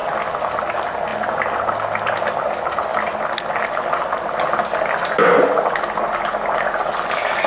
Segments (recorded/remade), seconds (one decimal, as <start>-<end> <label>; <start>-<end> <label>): 0.0-7.5 recorded